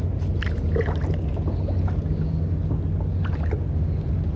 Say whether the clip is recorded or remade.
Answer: recorded